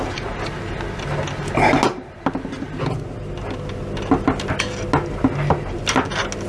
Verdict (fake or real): real